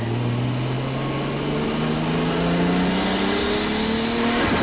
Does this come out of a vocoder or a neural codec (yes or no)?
no